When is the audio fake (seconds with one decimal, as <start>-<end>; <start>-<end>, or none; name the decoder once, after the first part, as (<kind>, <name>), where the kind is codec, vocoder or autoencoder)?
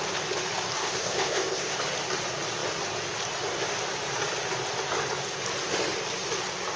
0.8-1.8 (codec, ZipCodec)